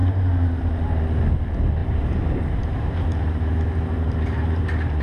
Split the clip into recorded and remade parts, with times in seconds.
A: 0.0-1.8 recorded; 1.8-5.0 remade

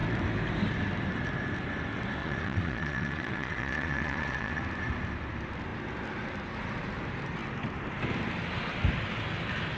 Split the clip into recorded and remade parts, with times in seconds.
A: 0.0-2.2 recorded; 2.2-4.6 remade; 4.6-9.8 recorded

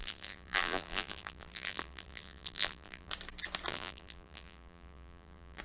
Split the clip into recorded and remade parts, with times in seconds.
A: 0.0-3.1 remade; 3.1-3.7 recorded; 3.7-5.6 remade

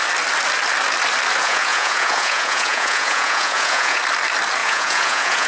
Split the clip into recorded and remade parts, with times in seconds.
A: 0.0-1.4 recorded; 1.4-4.0 remade; 4.0-4.6 recorded; 4.6-5.5 remade

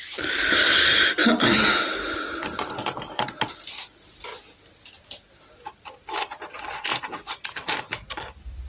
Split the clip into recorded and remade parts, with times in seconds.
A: 0.0-8.7 recorded